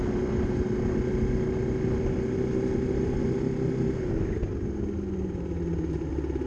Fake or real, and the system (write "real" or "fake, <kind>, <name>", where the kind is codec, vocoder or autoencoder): real